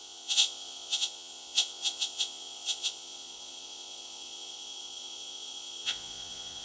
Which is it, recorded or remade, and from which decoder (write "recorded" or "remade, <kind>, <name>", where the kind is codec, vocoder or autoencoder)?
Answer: remade, vocoder, Vocos